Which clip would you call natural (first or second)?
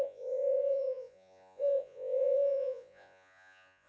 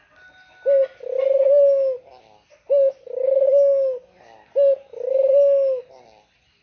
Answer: second